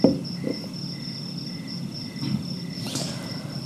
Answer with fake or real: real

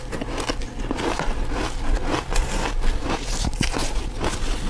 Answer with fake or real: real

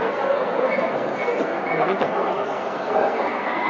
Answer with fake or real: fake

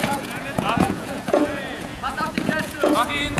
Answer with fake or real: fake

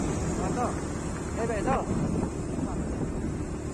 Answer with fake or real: real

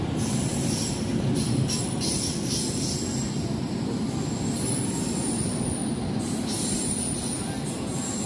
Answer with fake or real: real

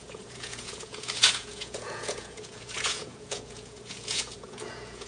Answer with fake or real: fake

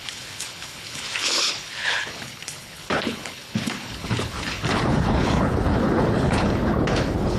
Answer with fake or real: fake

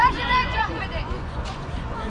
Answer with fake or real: fake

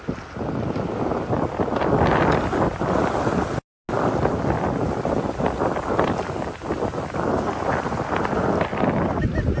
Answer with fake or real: real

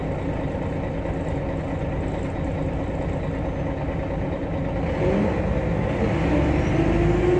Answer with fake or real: real